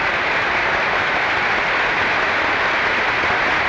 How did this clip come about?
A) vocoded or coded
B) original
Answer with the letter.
B